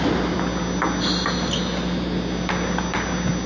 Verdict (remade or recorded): recorded